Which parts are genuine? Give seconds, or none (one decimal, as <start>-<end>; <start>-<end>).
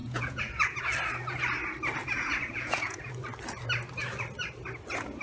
0.8-2.0; 3.1-5.2